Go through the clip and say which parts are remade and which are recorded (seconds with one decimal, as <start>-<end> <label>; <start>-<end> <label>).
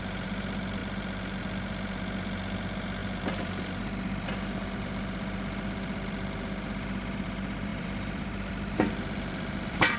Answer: 0.0-10.0 remade